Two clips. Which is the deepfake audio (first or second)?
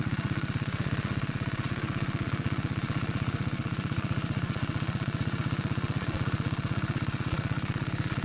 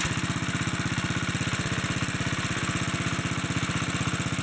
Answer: first